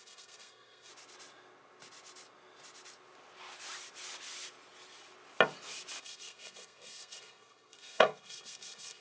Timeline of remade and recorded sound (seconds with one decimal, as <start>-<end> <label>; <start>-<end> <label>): 0.0-0.9 remade; 0.9-6.0 recorded; 6.0-9.0 remade